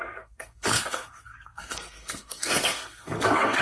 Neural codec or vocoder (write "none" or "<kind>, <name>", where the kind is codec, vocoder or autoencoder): codec, SNAC